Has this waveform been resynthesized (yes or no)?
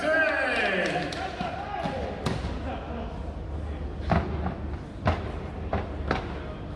no